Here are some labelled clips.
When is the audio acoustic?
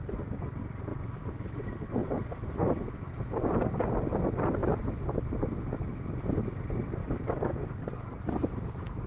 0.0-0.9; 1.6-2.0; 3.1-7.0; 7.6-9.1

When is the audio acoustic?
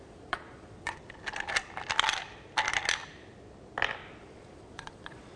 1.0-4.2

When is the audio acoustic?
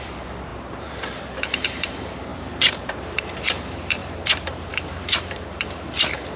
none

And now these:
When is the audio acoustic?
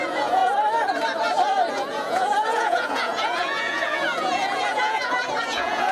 0.4-1.7